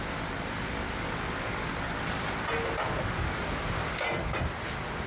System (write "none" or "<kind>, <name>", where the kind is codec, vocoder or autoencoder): none